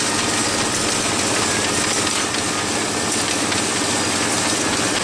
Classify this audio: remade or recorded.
recorded